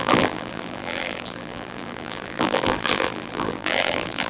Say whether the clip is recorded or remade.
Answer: remade